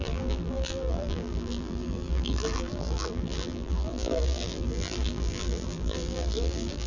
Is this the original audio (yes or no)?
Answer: no